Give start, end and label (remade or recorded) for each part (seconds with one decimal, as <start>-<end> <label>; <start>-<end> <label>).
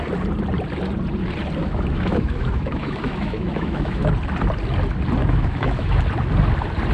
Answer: 0.0-1.6 recorded; 1.6-4.1 remade; 4.1-5.2 recorded; 5.2-6.0 remade; 6.0-6.9 recorded